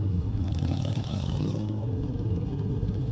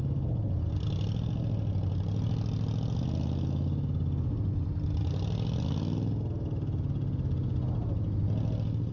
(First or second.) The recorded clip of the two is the second